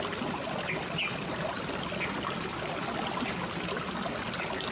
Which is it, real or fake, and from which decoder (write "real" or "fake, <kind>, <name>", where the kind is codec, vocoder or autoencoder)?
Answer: real